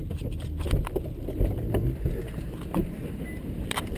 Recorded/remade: recorded